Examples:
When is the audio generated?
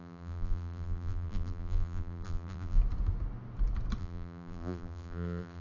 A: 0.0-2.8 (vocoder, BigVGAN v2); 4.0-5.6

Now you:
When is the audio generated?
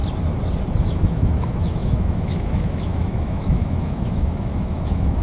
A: 0.8-5.2 (autoencoder, DAC-VAE)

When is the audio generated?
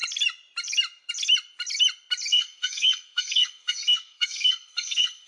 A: 2.3-5.3 (codec, SNAC)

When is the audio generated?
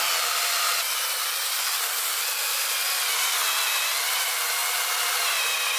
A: none